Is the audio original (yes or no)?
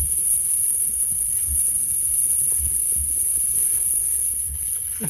no